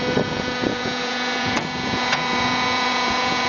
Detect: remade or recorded remade